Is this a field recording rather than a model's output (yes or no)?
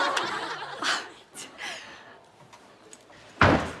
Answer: yes